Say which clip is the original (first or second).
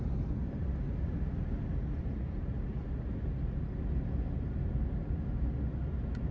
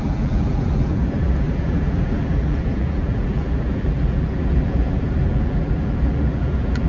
first